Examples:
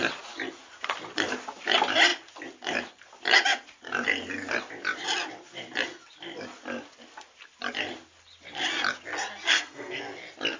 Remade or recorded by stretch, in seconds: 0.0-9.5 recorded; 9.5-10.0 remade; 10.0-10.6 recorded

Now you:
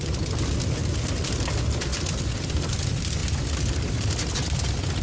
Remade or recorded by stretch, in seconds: 0.0-5.0 recorded

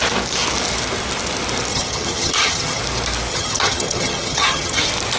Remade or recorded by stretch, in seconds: 0.0-1.7 recorded; 1.7-2.8 remade; 2.8-3.3 recorded; 3.3-4.8 remade; 4.8-5.2 recorded

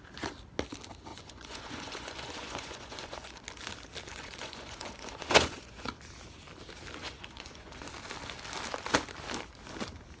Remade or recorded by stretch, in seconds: 0.0-1.1 recorded; 1.1-3.4 remade; 3.4-4.1 recorded; 4.1-5.9 remade; 5.9-7.0 recorded; 7.0-7.9 remade; 7.9-10.2 recorded